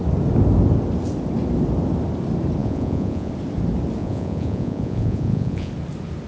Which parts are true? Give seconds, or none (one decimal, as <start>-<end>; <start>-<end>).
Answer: 0.0-2.6; 3.3-4.0; 5.7-6.3